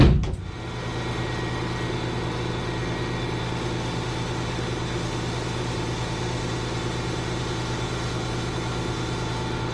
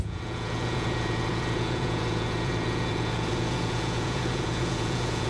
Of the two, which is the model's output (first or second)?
second